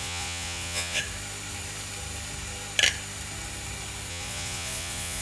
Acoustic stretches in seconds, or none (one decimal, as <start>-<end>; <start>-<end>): 1.0-4.1